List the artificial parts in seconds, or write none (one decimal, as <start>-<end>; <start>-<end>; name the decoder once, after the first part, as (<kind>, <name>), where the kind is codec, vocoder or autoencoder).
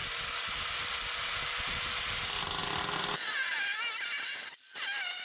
none